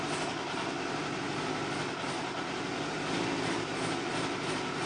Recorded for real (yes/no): yes